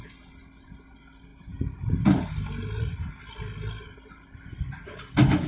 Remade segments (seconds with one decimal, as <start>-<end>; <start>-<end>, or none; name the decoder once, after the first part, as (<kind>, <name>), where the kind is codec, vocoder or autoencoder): none